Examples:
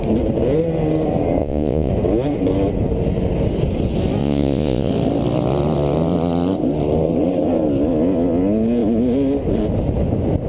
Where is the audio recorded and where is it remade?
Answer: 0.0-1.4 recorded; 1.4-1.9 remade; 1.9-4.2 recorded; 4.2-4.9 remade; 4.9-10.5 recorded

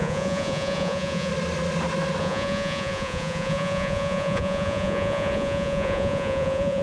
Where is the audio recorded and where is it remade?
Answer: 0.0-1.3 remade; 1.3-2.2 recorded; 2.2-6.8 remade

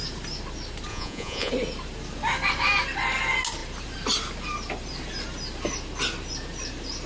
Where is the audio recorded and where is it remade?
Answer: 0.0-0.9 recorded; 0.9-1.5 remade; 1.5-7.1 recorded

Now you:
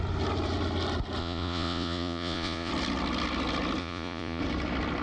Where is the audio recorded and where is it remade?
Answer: 0.0-1.2 recorded; 1.2-2.7 remade; 2.7-3.8 recorded; 3.8-4.4 remade; 4.4-5.0 recorded

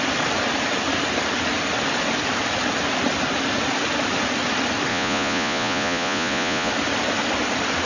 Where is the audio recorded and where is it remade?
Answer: 0.0-4.9 recorded; 4.9-6.7 remade; 6.7-7.9 recorded